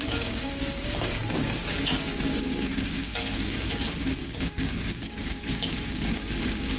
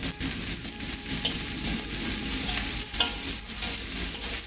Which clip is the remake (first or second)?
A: first